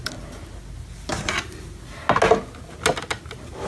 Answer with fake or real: real